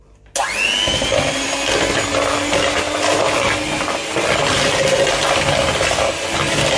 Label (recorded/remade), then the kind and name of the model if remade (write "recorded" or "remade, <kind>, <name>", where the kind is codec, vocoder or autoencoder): recorded